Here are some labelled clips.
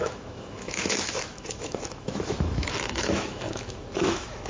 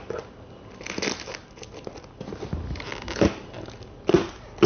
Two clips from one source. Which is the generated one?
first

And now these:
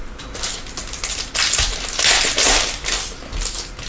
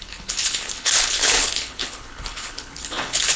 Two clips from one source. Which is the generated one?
second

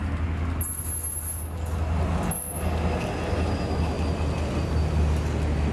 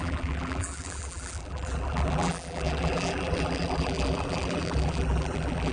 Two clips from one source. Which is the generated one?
second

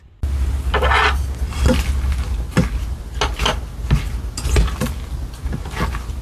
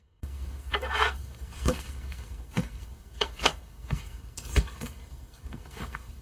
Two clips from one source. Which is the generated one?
second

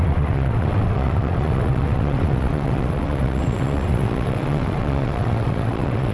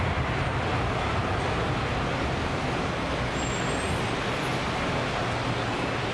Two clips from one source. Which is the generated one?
first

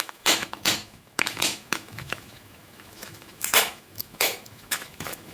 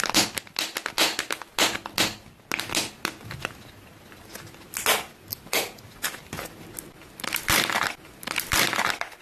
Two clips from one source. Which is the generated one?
first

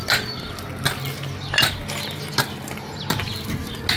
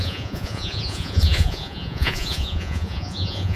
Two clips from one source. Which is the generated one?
second